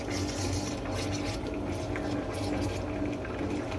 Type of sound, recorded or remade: recorded